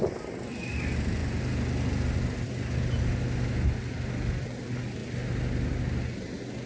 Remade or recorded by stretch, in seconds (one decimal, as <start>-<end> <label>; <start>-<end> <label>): 0.0-6.7 recorded